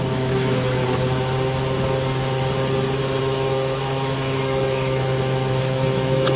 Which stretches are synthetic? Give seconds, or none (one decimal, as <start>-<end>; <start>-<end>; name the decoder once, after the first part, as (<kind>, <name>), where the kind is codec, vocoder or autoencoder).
0.0-0.8 (autoencoder, DAC-VAE); 3.2-6.4